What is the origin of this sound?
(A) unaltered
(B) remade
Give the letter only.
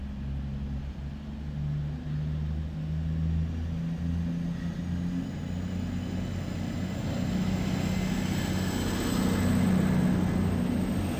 A